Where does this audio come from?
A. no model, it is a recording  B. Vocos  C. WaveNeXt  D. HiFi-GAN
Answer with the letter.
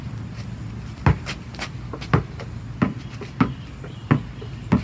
A